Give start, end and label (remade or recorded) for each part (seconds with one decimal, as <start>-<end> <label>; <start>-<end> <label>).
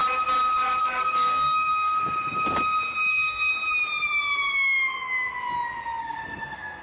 0.0-0.8 recorded; 0.8-2.0 remade; 2.0-3.1 recorded; 3.1-3.5 remade; 3.5-6.0 recorded; 6.0-6.8 remade